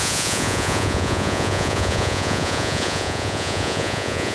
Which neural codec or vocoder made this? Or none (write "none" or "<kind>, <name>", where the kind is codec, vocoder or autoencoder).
vocoder, Vocos